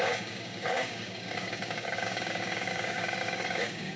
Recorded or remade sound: remade